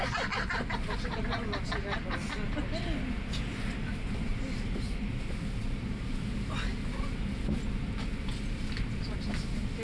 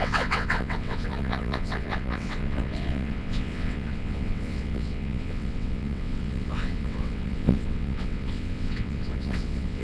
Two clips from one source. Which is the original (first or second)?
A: first